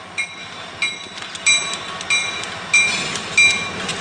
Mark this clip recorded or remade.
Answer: recorded